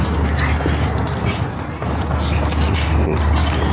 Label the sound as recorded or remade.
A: recorded